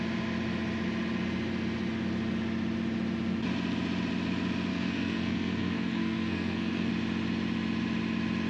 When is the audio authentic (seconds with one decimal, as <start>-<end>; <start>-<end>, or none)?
0.0-4.7; 6.9-8.5